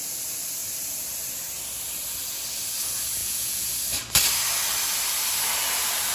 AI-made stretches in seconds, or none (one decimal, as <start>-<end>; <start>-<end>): 3.2-3.7